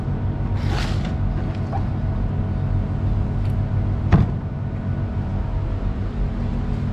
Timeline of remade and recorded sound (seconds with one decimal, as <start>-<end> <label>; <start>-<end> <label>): 0.0-6.9 recorded